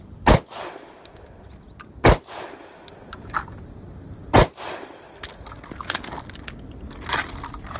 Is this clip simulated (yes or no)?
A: no